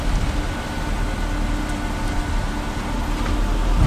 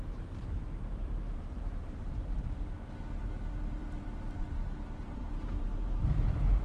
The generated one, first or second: second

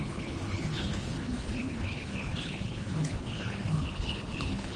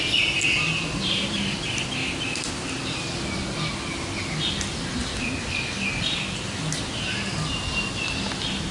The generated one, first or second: first